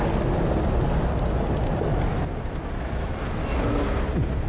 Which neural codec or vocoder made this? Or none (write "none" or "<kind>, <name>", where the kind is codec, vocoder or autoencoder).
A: none